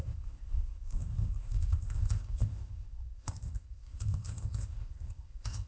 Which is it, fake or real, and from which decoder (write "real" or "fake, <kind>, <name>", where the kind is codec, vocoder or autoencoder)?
fake, codec, ZipCodec